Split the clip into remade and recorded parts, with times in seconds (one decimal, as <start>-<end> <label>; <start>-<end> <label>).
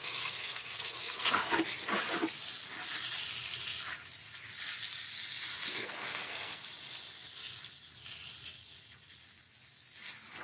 0.0-1.6 remade; 1.6-5.7 recorded; 5.7-6.6 remade; 6.6-10.4 recorded